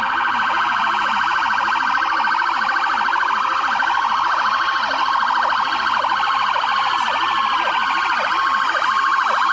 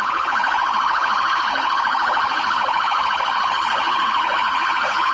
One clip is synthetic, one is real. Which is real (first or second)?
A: first